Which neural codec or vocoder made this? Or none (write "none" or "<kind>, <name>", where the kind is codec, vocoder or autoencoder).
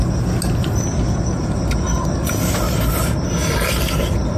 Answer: none